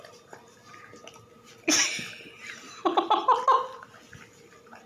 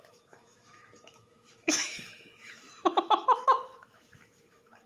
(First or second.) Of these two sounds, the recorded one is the first